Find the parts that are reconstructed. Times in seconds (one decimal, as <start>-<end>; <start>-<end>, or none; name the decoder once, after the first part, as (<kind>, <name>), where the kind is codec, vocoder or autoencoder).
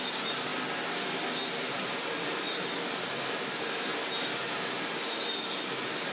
0.0-0.5 (vocoder, BigVGAN v2); 2.0-3.9; 5.5-6.1